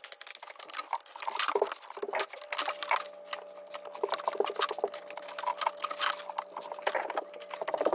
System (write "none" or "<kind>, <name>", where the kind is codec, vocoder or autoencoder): none